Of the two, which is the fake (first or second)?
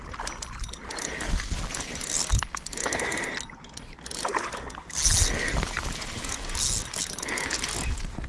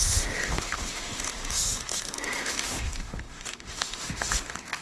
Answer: second